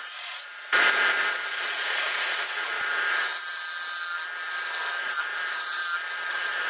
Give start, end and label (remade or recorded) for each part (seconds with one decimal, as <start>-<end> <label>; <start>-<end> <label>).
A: 0.0-3.3 remade; 3.3-5.0 recorded; 5.0-5.8 remade; 5.8-6.3 recorded; 6.3-6.7 remade